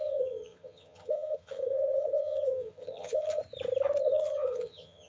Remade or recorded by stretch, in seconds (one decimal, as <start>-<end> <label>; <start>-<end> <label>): 0.0-3.4 remade; 3.4-4.0 recorded; 4.0-5.1 remade